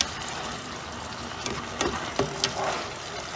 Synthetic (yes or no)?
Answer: no